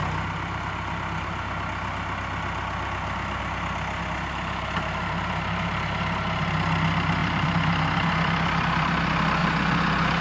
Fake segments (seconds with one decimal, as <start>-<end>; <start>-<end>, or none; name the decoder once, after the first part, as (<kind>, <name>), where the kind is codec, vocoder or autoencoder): 7.2-9.0 (vocoder, BigVGAN v2); 9.4-10.2